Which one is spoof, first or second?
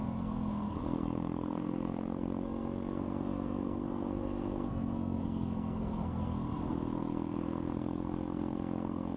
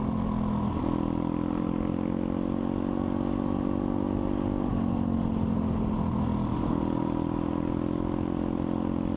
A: first